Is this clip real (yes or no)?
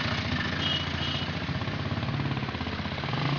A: yes